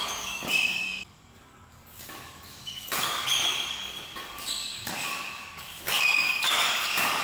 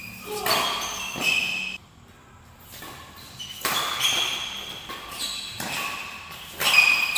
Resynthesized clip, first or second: first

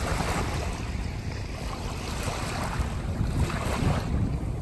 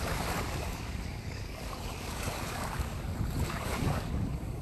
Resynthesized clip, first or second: second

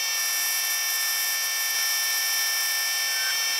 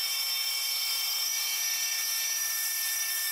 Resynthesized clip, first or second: second